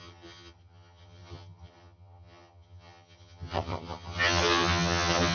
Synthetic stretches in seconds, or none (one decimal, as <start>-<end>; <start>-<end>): 0.0-5.3